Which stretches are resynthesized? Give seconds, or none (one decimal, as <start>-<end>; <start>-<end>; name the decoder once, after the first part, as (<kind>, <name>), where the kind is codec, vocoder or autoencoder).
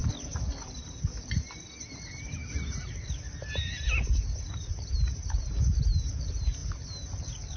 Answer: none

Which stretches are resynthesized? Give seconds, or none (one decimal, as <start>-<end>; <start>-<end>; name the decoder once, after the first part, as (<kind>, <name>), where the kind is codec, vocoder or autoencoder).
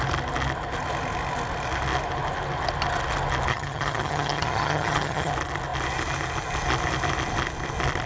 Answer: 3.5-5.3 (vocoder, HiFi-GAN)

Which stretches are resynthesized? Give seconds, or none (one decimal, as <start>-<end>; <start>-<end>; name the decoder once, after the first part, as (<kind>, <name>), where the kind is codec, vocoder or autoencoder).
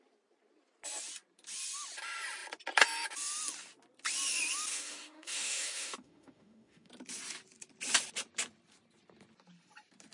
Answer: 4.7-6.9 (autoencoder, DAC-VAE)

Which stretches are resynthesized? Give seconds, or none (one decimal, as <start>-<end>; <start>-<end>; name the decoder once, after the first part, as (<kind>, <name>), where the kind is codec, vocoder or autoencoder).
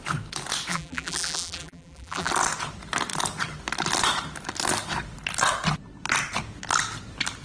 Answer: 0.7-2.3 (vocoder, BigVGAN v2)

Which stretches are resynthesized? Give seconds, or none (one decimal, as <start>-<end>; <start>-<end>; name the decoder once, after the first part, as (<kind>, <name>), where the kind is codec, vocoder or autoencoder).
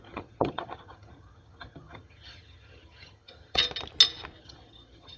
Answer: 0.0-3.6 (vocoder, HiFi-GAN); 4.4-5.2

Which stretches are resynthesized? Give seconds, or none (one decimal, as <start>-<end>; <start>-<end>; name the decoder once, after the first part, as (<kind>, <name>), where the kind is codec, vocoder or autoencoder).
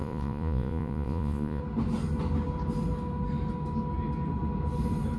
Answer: 0.0-1.6 (vocoder, Vocos)